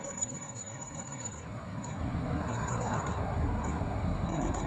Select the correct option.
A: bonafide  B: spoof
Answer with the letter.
B